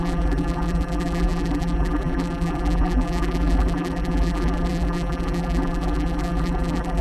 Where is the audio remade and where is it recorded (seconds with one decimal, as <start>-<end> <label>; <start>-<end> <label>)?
0.0-7.0 remade